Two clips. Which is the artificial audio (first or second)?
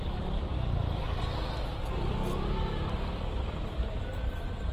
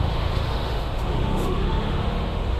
second